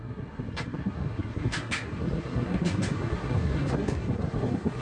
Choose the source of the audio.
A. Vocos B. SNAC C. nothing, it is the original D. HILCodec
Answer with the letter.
B